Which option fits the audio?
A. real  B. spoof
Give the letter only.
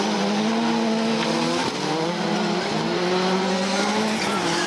A